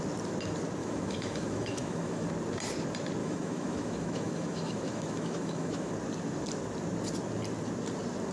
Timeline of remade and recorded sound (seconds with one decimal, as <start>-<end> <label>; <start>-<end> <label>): 0.0-0.8 recorded; 0.8-2.3 remade; 2.3-3.2 recorded; 3.2-5.9 remade; 5.9-8.3 recorded